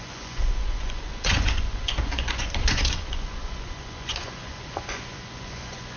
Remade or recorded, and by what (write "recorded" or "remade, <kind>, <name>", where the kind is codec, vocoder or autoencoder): remade, vocoder, Vocos